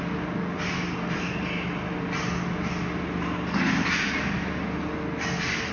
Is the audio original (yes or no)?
yes